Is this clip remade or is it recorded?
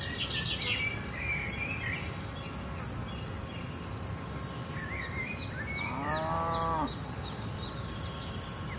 recorded